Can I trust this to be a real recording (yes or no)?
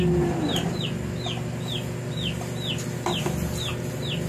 yes